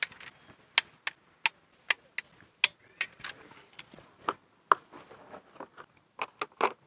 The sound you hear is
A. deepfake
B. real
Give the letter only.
B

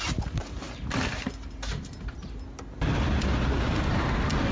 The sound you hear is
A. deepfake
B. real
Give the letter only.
B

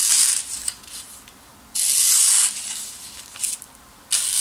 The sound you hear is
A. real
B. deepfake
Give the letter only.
A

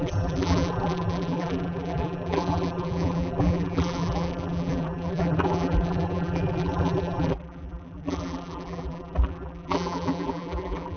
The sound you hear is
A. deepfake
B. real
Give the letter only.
A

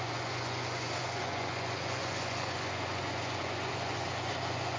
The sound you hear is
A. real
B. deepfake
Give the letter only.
B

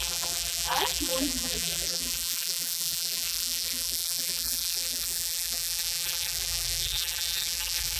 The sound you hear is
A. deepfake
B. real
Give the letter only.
A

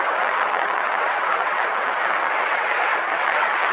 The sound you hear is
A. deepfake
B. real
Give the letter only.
A